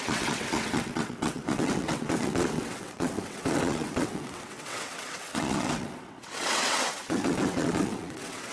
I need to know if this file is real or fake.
fake